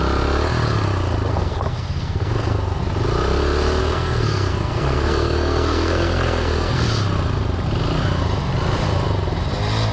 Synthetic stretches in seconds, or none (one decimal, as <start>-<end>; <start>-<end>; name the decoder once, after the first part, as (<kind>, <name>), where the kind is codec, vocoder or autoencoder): 1.3-2.8 (codec, SNAC); 3.8-6.9